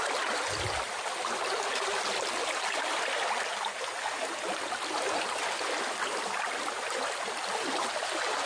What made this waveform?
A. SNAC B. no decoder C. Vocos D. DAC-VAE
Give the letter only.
B